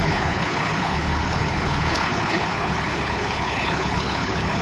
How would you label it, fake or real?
fake